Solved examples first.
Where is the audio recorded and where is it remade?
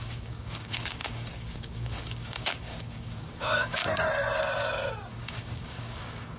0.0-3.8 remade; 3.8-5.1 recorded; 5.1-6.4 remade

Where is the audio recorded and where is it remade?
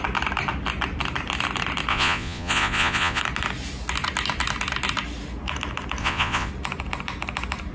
0.0-1.9 recorded; 1.9-3.2 remade; 3.2-6.0 recorded; 6.0-6.5 remade; 6.5-7.7 recorded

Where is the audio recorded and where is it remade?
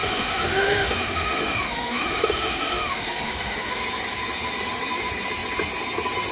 0.0-3.8 remade; 3.8-6.3 recorded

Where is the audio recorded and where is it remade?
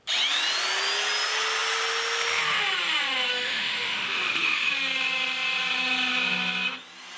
0.0-3.3 recorded; 3.3-4.7 remade; 4.7-7.2 recorded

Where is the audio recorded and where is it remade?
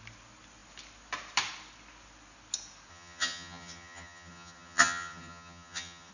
0.0-2.9 recorded; 2.9-6.1 remade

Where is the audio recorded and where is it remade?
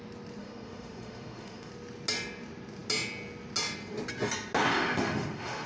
0.0-0.4 recorded; 0.4-1.7 remade; 1.7-4.7 recorded; 4.7-5.7 remade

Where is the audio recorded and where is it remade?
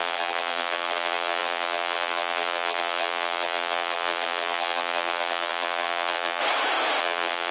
0.0-6.4 remade; 6.4-7.0 recorded; 7.0-7.5 remade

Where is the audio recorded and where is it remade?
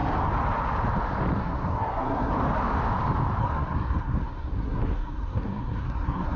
0.0-1.4 recorded; 1.4-2.3 remade; 2.3-3.4 recorded; 3.4-6.4 remade